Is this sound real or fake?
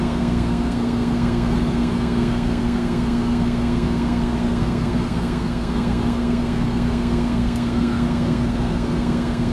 fake